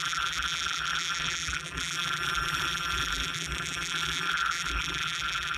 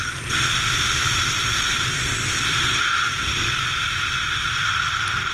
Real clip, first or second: second